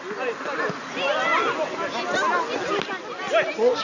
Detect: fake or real real